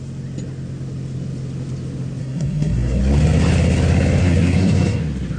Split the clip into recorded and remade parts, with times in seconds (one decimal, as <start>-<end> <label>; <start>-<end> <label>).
0.0-2.2 recorded; 2.2-3.0 remade; 3.0-4.2 recorded; 4.2-5.0 remade; 5.0-5.4 recorded